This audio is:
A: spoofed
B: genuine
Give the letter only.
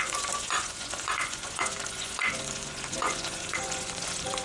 A